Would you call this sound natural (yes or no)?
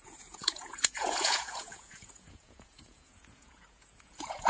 no